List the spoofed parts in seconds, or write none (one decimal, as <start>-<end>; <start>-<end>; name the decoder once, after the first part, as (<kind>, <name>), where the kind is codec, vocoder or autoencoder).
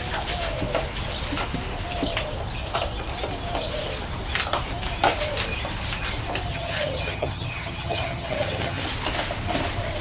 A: 6.5-8.8 (vocoder, HiFi-GAN)